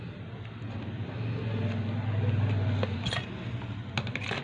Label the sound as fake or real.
real